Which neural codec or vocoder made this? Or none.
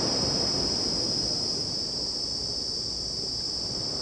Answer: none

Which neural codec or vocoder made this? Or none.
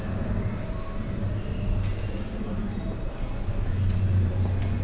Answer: none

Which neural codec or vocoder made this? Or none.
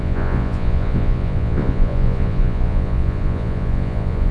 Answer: vocoder, Vocos